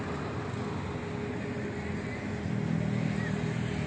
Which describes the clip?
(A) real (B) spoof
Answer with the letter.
A